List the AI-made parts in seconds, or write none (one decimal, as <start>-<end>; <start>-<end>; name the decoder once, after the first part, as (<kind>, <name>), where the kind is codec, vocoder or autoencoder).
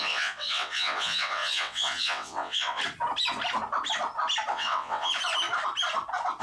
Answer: 0.0-2.8 (vocoder, WaveNeXt); 4.5-5.1